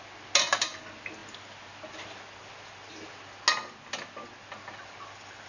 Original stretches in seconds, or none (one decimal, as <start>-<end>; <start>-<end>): 0.0-5.5